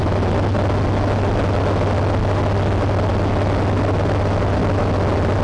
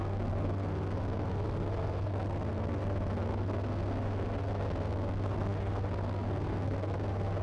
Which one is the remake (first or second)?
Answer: second